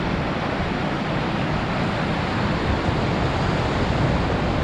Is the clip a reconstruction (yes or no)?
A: no